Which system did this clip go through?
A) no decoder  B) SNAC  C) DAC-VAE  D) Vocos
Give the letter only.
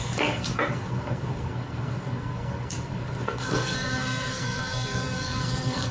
B